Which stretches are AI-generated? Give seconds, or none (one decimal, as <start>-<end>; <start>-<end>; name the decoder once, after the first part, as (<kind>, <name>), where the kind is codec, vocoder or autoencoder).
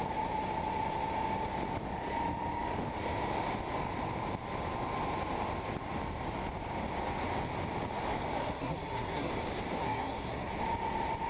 8.4-9.3 (codec, SNAC); 9.8-10.5